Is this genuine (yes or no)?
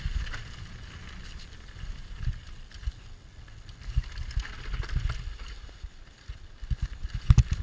yes